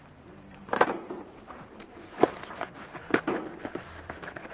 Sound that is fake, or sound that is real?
fake